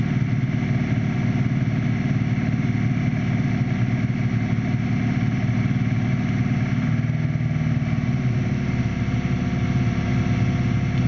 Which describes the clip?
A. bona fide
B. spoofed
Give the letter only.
A